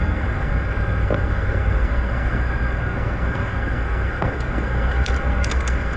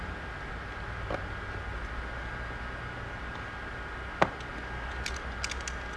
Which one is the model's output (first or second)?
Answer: first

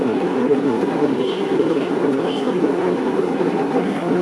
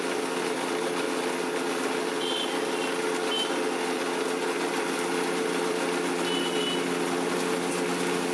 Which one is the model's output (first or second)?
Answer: first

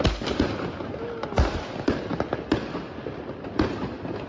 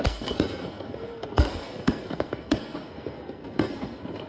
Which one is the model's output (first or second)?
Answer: second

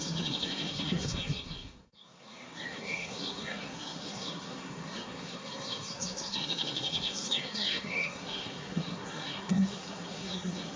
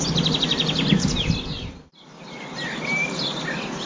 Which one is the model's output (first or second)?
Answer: first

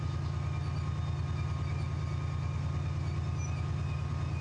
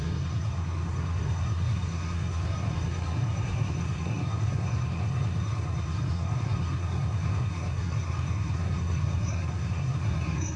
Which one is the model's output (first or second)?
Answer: second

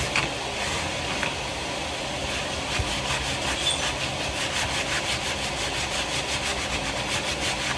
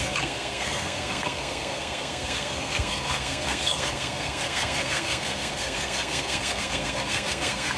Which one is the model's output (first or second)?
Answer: second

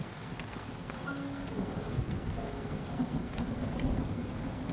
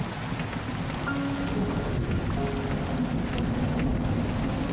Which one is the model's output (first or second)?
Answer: first